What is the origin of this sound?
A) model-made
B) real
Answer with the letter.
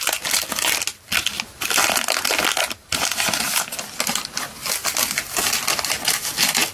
B